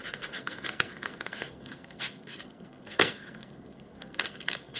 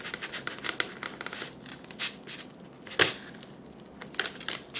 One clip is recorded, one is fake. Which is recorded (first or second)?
second